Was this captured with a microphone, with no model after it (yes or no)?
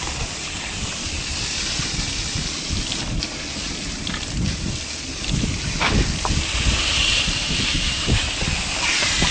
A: no